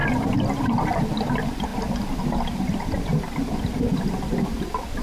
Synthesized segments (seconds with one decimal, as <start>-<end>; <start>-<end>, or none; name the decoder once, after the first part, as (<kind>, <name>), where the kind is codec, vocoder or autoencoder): none